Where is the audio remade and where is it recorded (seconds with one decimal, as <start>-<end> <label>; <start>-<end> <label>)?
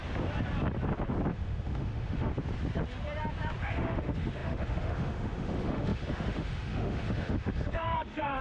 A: 0.0-1.3 recorded; 1.3-2.3 remade; 2.3-3.6 recorded; 3.6-8.4 remade